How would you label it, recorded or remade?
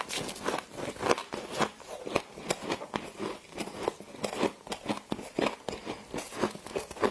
recorded